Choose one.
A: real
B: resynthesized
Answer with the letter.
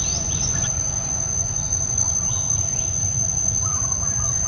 B